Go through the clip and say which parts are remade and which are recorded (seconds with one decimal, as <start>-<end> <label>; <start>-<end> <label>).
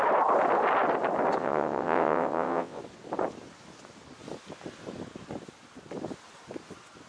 0.0-1.4 recorded; 1.4-2.8 remade; 2.8-7.1 recorded